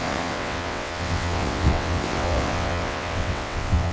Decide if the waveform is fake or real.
fake